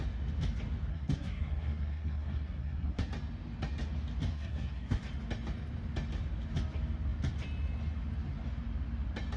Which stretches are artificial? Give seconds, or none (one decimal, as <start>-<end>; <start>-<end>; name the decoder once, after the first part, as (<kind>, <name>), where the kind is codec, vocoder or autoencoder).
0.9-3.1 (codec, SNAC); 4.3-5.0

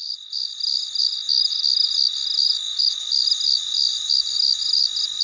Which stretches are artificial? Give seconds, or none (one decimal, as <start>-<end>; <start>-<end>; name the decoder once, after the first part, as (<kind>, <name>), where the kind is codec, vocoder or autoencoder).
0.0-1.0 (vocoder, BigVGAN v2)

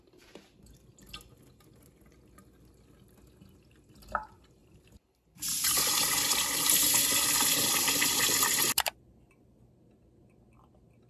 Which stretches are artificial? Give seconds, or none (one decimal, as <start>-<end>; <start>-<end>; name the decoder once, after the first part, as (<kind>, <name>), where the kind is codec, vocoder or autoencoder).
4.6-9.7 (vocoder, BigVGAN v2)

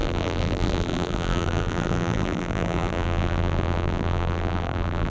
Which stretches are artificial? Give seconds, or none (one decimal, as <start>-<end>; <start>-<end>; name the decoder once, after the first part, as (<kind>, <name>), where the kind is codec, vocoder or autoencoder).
0.0-5.1 (vocoder, BigVGAN v2)